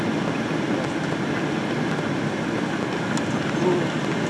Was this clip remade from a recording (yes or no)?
no